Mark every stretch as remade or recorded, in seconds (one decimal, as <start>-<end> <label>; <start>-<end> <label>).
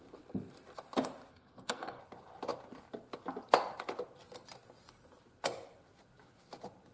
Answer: 0.0-1.3 recorded; 1.3-2.0 remade; 2.0-6.9 recorded